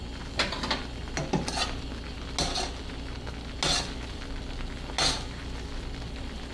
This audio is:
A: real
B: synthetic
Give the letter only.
A